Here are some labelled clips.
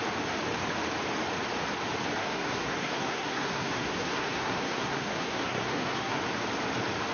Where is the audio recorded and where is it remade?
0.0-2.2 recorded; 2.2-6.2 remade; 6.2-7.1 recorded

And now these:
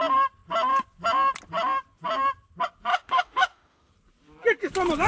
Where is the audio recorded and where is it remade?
0.0-2.9 recorded; 2.9-3.9 remade; 3.9-5.1 recorded

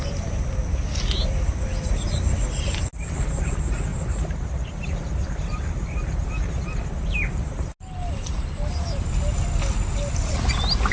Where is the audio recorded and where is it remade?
0.0-3.9 recorded; 3.9-7.6 remade; 7.6-10.9 recorded

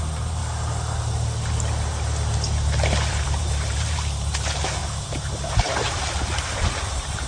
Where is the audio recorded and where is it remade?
0.0-0.4 remade; 0.4-3.1 recorded; 3.1-7.3 remade

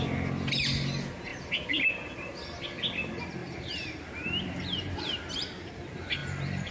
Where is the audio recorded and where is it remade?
0.0-3.4 recorded; 3.4-5.7 remade; 5.7-6.7 recorded

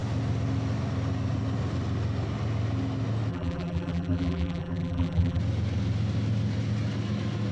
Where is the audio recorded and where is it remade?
0.0-3.3 recorded; 3.3-5.4 remade; 5.4-7.5 recorded